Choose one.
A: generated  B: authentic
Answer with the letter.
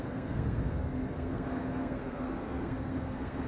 A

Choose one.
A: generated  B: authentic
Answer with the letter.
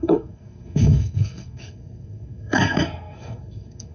A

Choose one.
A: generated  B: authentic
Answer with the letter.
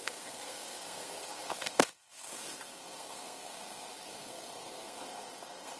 A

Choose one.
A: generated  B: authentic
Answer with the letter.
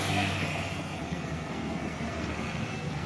A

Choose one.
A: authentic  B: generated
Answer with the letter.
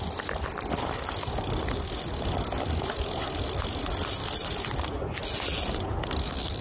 A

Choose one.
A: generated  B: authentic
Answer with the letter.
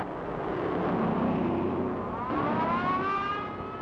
B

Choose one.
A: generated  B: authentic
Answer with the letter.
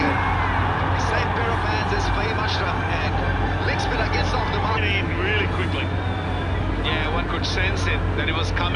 B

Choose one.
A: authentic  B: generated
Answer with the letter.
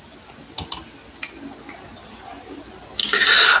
A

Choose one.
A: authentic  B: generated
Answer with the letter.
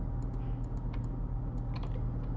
A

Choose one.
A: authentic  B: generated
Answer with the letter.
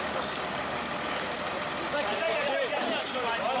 A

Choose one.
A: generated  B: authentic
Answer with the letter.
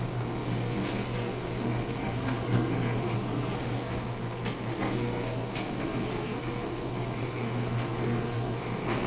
A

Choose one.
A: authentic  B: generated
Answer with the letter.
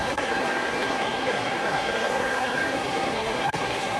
B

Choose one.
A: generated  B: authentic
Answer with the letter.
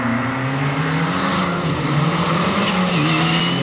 B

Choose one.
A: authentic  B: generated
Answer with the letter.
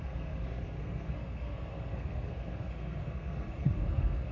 B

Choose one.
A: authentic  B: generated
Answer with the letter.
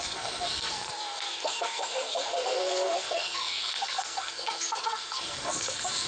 B